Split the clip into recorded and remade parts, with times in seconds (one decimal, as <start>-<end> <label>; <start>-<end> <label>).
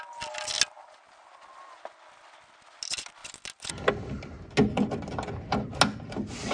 0.0-6.5 recorded